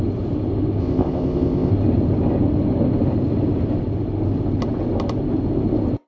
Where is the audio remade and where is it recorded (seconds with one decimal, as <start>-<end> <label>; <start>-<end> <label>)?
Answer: 0.0-0.8 recorded; 0.8-1.7 remade; 1.7-6.1 recorded